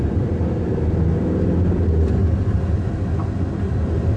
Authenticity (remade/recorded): recorded